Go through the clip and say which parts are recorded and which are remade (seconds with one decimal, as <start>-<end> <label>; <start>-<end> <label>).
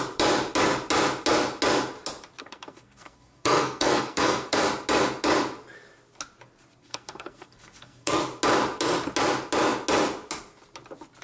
0.0-2.4 recorded; 2.4-4.6 remade; 4.6-6.8 recorded; 6.8-8.2 remade; 8.2-11.2 recorded